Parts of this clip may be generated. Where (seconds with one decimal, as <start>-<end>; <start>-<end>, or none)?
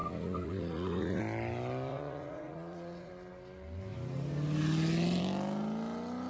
0.0-1.2; 1.9-3.1